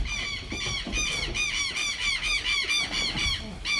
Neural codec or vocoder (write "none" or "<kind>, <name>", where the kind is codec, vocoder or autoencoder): none